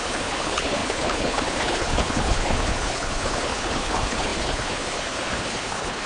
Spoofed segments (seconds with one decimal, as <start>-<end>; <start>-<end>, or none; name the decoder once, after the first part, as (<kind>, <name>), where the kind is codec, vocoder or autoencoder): 0.0-6.1 (codec, HILCodec)